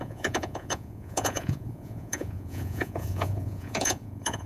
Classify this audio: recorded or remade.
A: remade